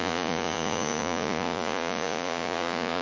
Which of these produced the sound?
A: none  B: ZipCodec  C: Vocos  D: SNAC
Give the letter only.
C